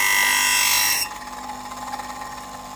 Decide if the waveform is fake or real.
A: real